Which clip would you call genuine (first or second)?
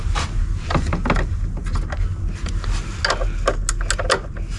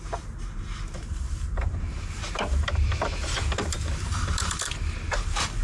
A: first